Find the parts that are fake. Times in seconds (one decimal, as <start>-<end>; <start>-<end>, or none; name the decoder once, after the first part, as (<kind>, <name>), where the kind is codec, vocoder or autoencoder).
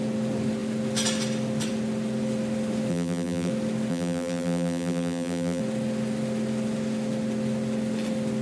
2.9-3.5 (vocoder, BigVGAN v2); 3.9-5.6